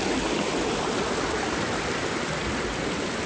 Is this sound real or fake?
real